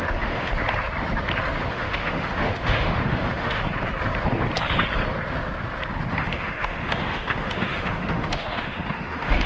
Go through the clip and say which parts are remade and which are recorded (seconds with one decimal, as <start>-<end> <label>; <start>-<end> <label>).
0.0-0.5 remade; 0.5-1.7 recorded; 1.7-3.6 remade; 3.6-6.1 recorded; 6.1-9.5 remade